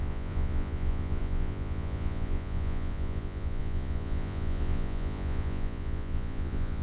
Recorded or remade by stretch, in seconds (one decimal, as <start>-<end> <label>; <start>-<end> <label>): 0.0-6.8 remade